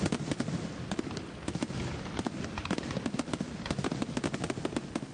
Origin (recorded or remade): recorded